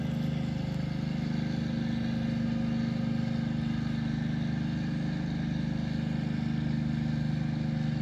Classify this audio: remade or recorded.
recorded